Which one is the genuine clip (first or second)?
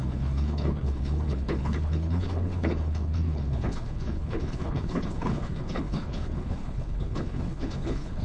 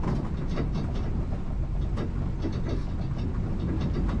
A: second